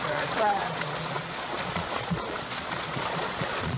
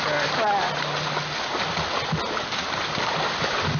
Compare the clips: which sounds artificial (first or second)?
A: first